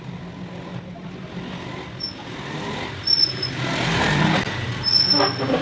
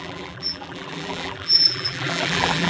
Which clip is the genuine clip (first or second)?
first